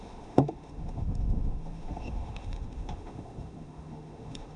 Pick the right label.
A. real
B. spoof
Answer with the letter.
B